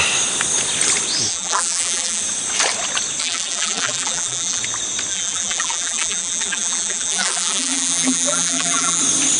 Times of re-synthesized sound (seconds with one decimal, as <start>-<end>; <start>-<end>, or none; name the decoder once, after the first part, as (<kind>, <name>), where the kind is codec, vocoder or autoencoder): 1.3-2.2 (vocoder, BigVGAN v2); 3.2-4.6; 5.1-9.0